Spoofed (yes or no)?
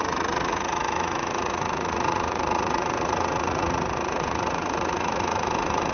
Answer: yes